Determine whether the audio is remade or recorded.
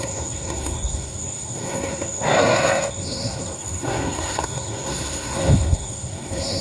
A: remade